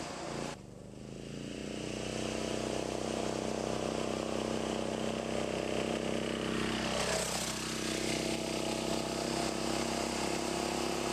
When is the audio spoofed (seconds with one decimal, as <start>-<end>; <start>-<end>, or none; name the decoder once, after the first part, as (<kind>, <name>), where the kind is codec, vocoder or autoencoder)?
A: none